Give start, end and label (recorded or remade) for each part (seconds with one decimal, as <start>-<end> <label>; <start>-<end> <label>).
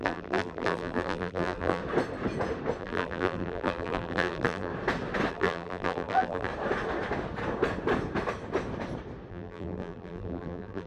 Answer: 0.0-1.8 remade; 1.8-2.8 recorded; 2.8-4.7 remade; 4.7-5.3 recorded; 5.3-6.5 remade; 6.5-9.3 recorded; 9.3-10.9 remade